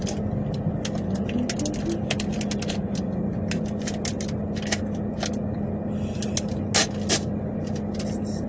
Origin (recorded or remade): recorded